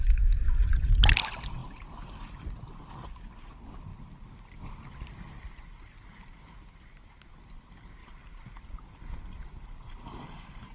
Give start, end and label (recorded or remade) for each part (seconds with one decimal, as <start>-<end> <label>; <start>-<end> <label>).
0.0-10.7 recorded